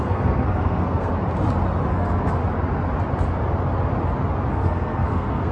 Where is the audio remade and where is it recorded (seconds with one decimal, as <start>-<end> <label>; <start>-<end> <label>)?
0.0-1.1 remade; 1.1-1.9 recorded; 1.9-2.4 remade; 2.4-4.5 recorded; 4.5-5.5 remade